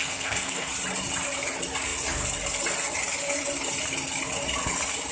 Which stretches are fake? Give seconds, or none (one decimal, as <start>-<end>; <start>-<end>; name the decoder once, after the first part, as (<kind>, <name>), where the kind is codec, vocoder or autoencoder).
0.0-0.7 (codec, SNAC)